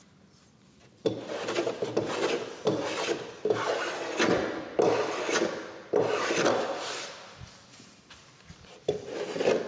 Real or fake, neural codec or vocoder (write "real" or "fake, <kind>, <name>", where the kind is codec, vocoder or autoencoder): real